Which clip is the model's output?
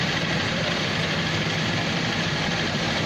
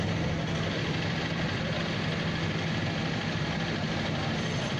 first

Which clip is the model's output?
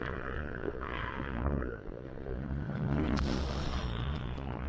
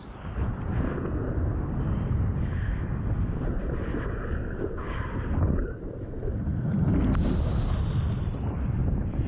first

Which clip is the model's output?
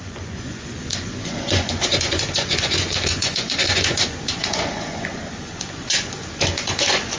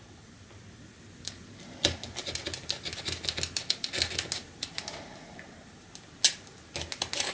first